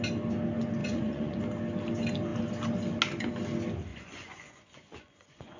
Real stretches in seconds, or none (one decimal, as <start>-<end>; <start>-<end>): 0.0-0.8; 1.4-3.9